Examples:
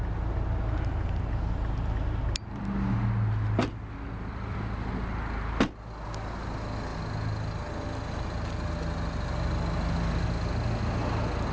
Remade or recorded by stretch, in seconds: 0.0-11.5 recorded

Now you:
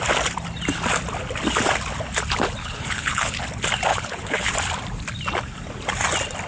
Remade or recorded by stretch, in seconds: 0.0-2.6 recorded; 2.6-3.4 remade; 3.4-3.9 recorded; 3.9-4.5 remade; 4.5-6.5 recorded

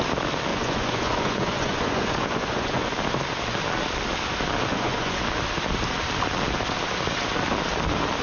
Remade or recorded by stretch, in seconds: 0.0-0.5 recorded; 0.5-2.9 remade; 2.9-4.7 recorded; 4.7-5.2 remade; 5.2-8.2 recorded